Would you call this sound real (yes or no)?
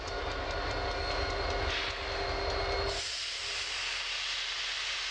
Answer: yes